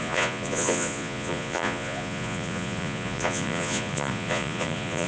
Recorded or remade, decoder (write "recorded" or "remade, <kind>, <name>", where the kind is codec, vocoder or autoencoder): remade, vocoder, Vocos